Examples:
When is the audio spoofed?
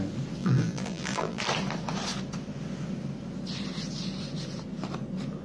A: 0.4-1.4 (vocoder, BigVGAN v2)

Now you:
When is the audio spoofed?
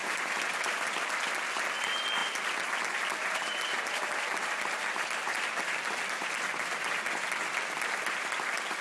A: 0.0-0.6 (vocoder, BigVGAN v2); 2.2-6.9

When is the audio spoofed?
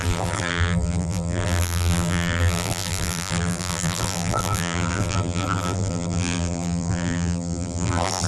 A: 0.0-8.3 (vocoder, BigVGAN v2)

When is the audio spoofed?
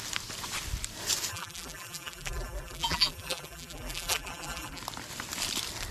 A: 1.3-4.8 (vocoder, BigVGAN v2)